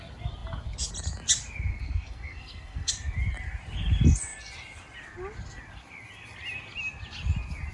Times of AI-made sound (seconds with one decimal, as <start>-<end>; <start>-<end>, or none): 1.7-2.9